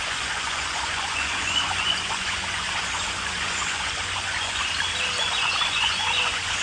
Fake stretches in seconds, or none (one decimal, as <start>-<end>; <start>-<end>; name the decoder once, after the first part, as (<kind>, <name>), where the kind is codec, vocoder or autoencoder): 0.0-4.6 (vocoder, Vocos); 5.2-6.6